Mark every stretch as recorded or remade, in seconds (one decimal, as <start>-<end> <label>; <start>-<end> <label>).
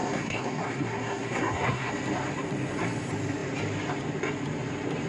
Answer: 0.0-1.9 remade; 1.9-5.1 recorded